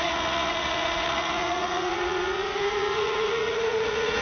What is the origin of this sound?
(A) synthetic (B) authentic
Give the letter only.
A